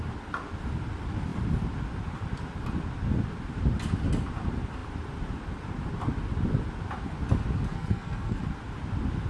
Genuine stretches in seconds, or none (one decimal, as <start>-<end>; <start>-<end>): 0.0-7.7; 8.4-9.3